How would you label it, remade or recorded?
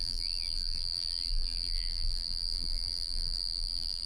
remade